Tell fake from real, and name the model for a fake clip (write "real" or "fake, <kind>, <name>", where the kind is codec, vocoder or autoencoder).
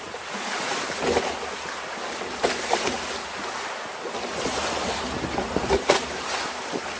real